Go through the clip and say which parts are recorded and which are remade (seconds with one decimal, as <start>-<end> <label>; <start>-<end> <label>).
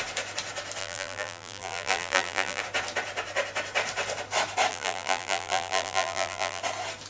0.0-0.8 recorded; 0.8-2.6 remade; 2.6-4.7 recorded; 4.7-6.6 remade; 6.6-7.1 recorded